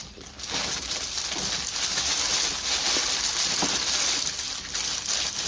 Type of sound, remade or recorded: recorded